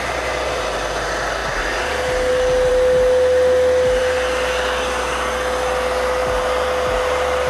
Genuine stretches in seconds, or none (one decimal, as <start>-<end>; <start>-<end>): 0.0-7.5